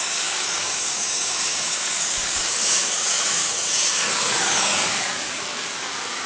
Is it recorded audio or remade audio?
remade